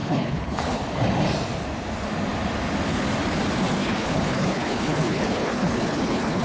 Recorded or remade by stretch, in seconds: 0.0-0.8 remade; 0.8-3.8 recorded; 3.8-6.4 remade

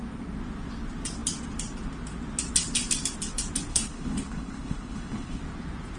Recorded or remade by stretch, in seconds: 0.0-3.7 recorded; 3.7-5.4 remade; 5.4-6.0 recorded

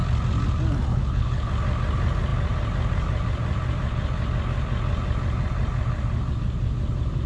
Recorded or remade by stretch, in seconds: 0.0-0.9 recorded; 0.9-1.5 remade; 1.5-7.3 recorded